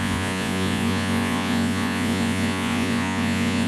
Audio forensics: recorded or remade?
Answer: remade